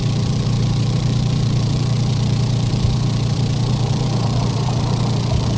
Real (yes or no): no